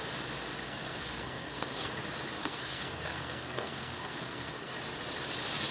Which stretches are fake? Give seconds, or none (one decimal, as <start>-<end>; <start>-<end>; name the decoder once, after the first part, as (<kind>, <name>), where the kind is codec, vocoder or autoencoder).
0.6-1.9 (codec, SNAC); 2.4-4.7